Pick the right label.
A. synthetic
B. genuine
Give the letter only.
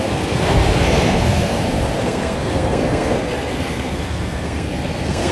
A